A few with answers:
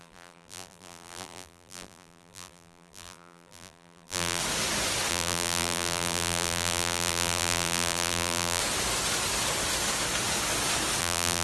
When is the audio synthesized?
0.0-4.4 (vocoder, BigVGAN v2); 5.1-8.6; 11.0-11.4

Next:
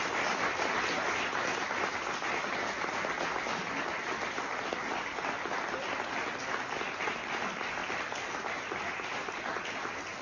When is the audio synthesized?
none